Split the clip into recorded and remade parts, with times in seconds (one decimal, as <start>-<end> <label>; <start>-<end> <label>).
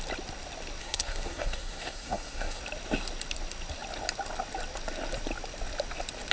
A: 0.0-0.8 recorded; 0.8-2.6 remade; 2.6-6.3 recorded